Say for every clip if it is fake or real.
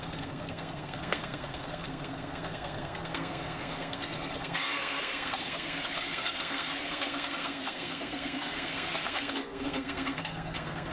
fake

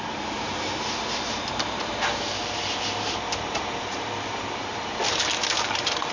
fake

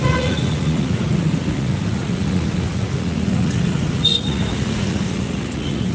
fake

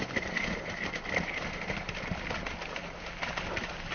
real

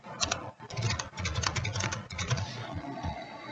fake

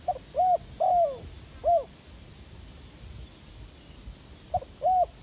real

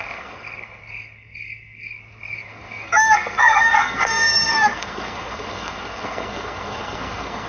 fake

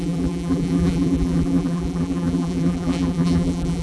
fake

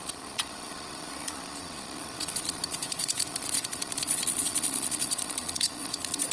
fake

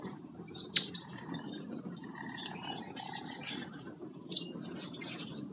fake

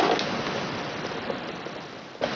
real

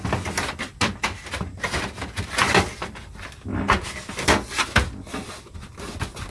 real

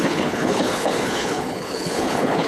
fake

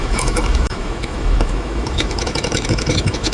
fake